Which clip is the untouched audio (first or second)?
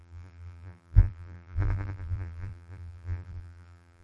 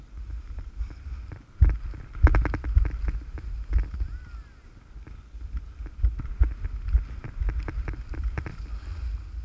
second